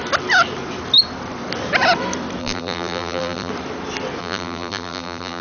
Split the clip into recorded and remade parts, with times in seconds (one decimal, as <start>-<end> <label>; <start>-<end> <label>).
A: 0.0-2.4 recorded; 2.4-3.5 remade; 3.5-4.2 recorded; 4.2-5.4 remade